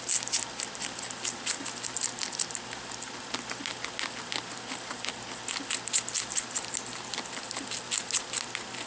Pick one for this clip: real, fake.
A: real